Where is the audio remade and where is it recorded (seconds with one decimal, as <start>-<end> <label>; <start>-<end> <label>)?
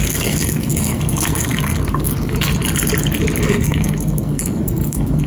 0.0-2.5 remade; 2.5-3.4 recorded; 3.4-5.3 remade